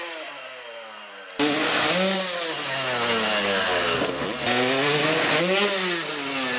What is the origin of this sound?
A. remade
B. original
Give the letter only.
B